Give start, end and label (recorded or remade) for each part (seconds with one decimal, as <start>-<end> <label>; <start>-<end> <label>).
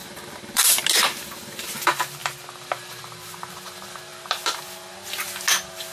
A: 0.0-1.3 remade; 1.3-2.2 recorded; 2.2-3.0 remade; 3.0-4.1 recorded; 4.1-4.6 remade; 4.6-5.9 recorded